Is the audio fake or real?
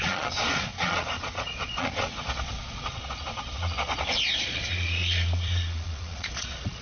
fake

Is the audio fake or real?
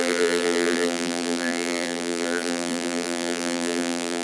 fake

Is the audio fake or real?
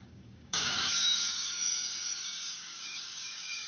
fake